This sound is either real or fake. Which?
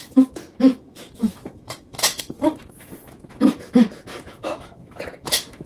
fake